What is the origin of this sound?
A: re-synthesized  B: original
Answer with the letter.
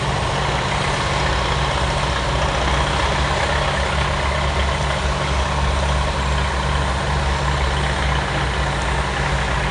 B